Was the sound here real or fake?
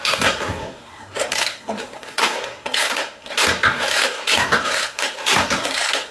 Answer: fake